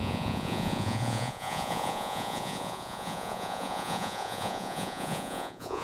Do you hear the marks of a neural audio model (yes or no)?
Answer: yes